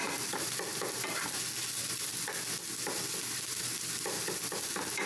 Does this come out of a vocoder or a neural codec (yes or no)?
no